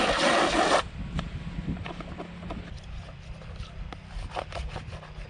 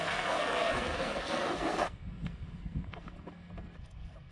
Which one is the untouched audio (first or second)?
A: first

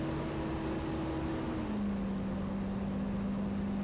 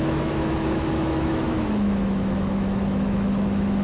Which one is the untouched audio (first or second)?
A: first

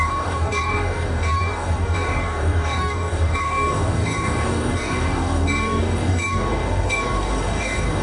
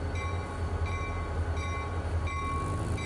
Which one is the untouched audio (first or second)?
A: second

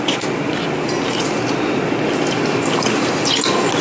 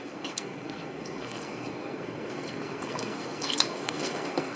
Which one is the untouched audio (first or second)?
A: first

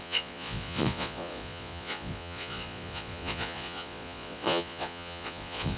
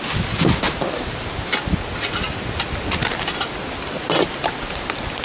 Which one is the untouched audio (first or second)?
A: second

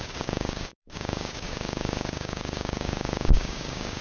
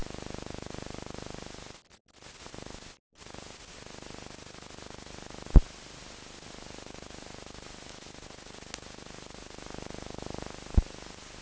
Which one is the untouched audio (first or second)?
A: second